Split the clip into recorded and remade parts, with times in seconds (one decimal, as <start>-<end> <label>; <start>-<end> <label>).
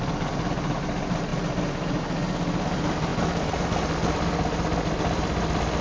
0.0-1.3 recorded; 1.3-2.0 remade; 2.0-3.1 recorded; 3.1-3.6 remade; 3.6-5.8 recorded